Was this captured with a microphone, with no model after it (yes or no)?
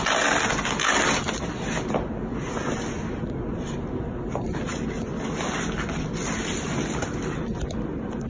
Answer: yes